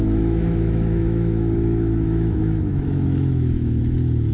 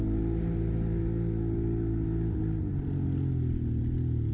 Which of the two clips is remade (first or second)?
first